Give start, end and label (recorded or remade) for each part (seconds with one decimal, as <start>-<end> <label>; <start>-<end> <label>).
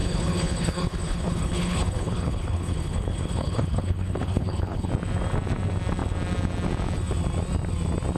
0.0-4.9 remade; 4.9-8.2 recorded